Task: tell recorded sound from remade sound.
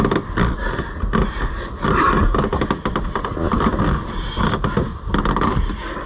recorded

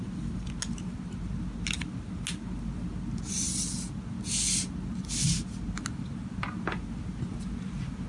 recorded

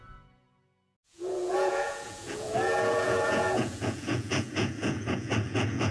remade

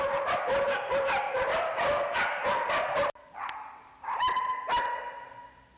recorded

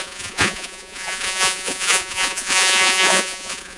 remade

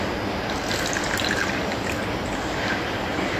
recorded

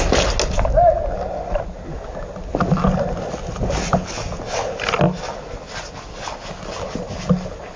recorded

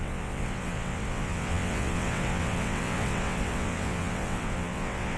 remade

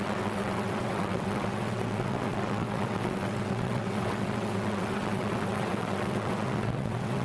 remade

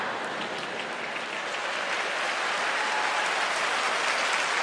recorded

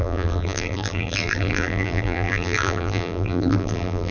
remade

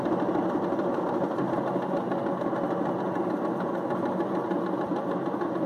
recorded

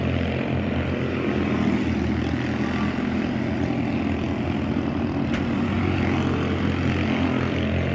recorded